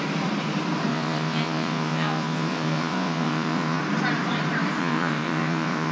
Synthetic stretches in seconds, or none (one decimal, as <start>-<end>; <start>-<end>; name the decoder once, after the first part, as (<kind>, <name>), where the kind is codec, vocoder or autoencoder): 0.9-3.8 (vocoder, WaveNeXt); 4.8-5.9